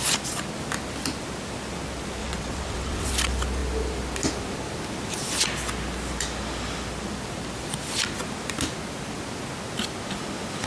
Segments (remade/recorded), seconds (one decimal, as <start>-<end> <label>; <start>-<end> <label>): 0.0-2.2 recorded; 2.2-3.1 remade; 3.1-10.7 recorded